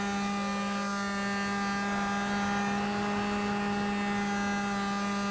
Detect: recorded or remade recorded